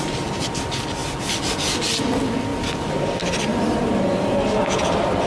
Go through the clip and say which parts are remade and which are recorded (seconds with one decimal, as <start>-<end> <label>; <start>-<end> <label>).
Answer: 0.0-5.3 recorded